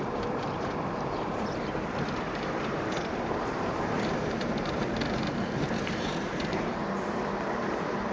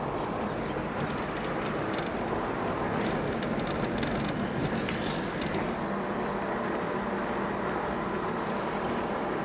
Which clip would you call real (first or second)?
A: second